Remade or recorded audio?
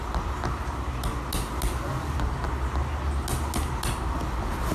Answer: recorded